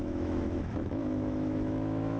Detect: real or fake fake